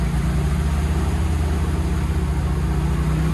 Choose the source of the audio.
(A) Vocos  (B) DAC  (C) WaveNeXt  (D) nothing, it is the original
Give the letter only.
D